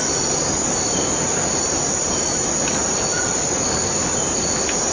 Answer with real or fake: real